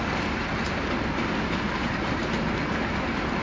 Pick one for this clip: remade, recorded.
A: remade